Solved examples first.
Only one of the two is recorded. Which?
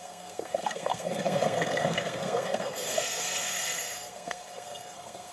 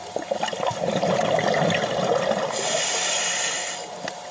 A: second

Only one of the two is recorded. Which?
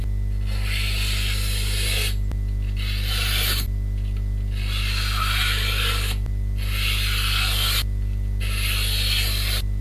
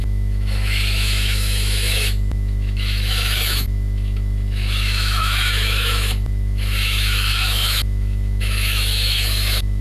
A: first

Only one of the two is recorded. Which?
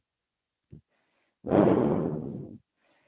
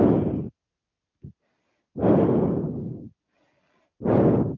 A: second